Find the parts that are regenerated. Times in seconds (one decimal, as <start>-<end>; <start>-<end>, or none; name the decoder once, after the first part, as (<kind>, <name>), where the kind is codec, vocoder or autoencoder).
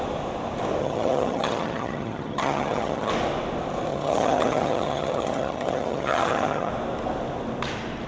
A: 0.8-3.1 (vocoder, HiFi-GAN); 3.9-6.7